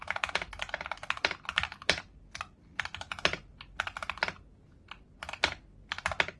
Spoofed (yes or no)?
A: no